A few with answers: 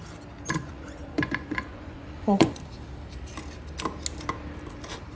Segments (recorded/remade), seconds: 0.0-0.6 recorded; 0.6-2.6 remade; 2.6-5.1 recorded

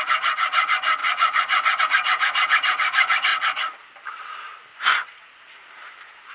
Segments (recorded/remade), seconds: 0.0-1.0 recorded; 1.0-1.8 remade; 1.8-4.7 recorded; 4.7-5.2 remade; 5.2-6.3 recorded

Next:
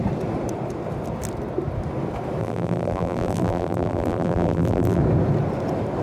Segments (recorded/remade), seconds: 0.0-2.4 recorded; 2.4-5.0 remade; 5.0-6.0 recorded